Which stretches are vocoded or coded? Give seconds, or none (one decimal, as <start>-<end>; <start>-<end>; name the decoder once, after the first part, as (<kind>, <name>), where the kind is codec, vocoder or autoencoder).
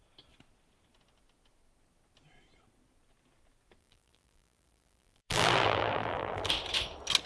3.8-6.5 (vocoder, BigVGAN v2)